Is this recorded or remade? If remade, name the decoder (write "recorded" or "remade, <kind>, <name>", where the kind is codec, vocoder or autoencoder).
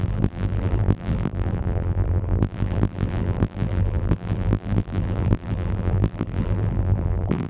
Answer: remade, vocoder, BigVGAN v2